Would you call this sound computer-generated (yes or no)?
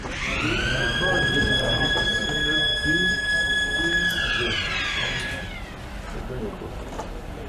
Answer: no